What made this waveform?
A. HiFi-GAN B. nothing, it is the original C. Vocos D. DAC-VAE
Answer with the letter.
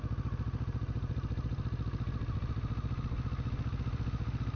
B